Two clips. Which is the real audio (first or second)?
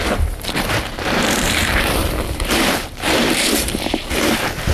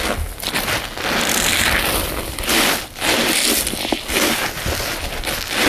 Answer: second